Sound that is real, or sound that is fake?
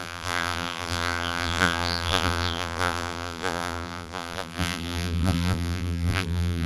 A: fake